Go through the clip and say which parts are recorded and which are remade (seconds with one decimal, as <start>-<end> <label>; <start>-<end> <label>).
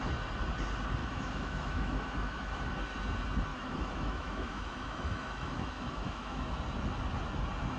0.0-1.0 recorded; 1.0-2.5 remade; 2.5-3.5 recorded; 3.5-6.6 remade; 6.6-7.8 recorded